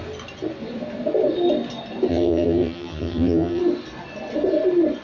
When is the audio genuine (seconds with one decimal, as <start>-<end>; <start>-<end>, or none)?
0.0-2.1; 3.6-5.0